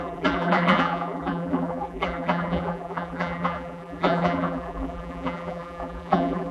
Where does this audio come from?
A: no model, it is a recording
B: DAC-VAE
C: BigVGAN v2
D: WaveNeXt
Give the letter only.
C